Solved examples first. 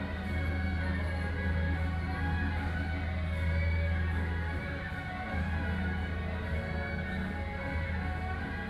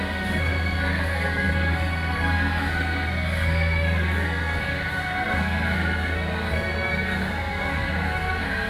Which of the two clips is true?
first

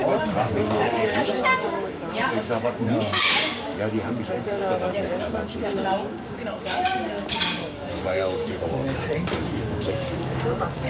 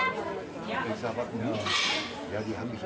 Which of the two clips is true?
second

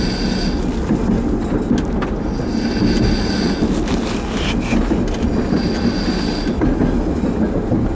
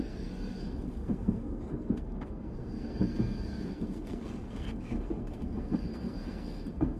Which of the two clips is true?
first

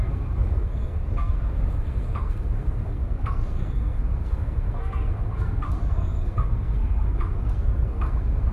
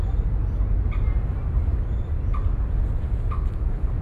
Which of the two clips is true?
second